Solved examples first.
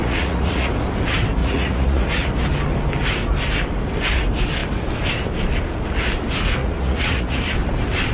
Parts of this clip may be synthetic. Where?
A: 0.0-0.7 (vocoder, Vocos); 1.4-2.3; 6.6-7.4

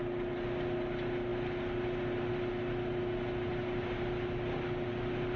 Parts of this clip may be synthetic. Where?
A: none

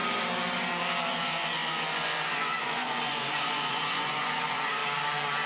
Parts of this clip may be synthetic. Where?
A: 1.1-4.8 (vocoder, Vocos)

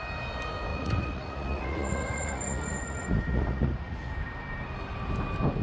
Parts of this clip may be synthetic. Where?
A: 0.7-4.1 (vocoder, Vocos)

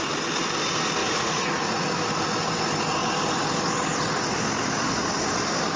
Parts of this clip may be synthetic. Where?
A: 1.0-1.9 (vocoder, Vocos)